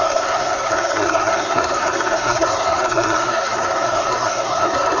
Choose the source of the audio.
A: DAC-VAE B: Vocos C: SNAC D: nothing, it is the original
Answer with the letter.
C